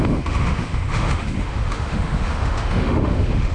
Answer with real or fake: fake